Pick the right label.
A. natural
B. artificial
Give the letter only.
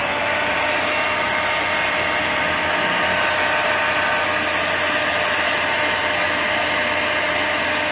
A